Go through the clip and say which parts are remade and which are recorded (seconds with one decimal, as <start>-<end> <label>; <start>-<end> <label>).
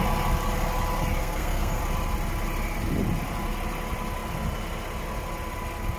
0.0-1.2 recorded; 1.2-1.8 remade; 1.8-6.0 recorded